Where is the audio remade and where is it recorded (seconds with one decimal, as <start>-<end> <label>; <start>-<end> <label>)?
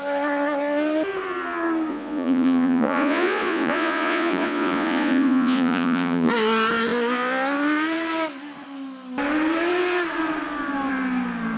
0.0-1.9 recorded; 1.9-6.3 remade; 6.3-11.6 recorded